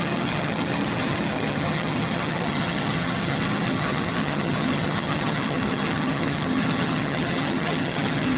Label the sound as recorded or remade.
remade